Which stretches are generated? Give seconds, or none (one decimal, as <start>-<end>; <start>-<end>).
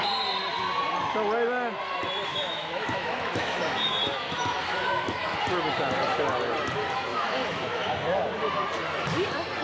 2.3-5.4; 7.1-7.9